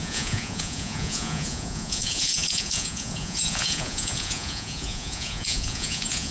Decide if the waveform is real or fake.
fake